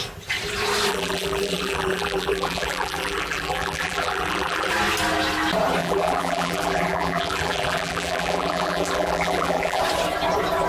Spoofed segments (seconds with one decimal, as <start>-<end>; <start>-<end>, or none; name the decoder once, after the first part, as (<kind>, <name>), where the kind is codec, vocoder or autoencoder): 0.9-4.7 (vocoder, BigVGAN v2); 5.8-9.8